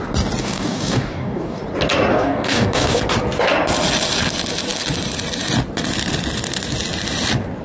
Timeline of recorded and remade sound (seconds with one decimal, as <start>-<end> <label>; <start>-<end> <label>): 0.0-0.4 recorded; 0.4-1.6 remade; 1.6-2.1 recorded; 2.1-3.0 remade; 3.0-7.6 recorded